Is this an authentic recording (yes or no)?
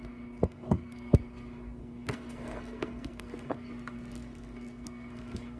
no